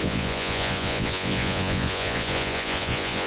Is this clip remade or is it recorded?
remade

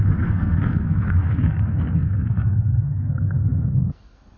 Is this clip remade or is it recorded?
remade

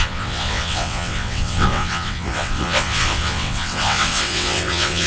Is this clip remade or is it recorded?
remade